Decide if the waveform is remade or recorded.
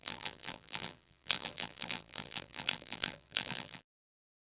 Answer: remade